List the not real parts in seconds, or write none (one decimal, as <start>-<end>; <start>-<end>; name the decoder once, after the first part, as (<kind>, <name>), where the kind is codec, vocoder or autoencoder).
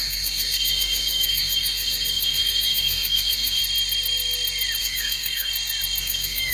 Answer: 0.0-3.6 (codec, DAC); 4.8-5.5; 6.0-6.5